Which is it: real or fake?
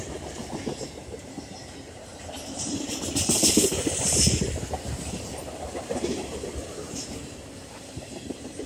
fake